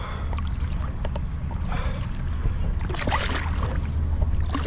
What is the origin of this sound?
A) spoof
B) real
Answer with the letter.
B